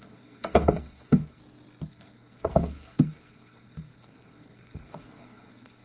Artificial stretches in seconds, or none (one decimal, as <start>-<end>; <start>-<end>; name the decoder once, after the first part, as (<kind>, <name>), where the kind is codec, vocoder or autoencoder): 0.0-1.4 (codec, SNAC); 1.9-5.8